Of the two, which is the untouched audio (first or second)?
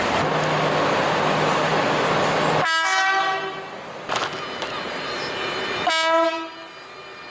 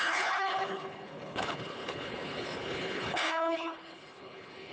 first